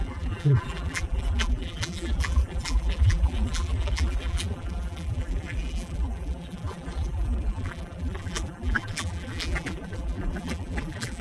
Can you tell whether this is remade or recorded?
remade